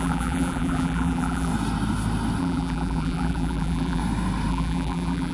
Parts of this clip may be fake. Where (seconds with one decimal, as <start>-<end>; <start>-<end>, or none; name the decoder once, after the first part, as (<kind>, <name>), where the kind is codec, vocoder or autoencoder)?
0.0-1.5 (vocoder, BigVGAN v2); 2.4-4.0; 4.5-5.3